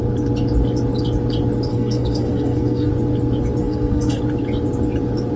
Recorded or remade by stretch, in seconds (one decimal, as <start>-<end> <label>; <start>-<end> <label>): 0.0-1.7 recorded; 1.7-2.9 remade; 2.9-3.6 recorded; 3.6-4.2 remade; 4.2-5.4 recorded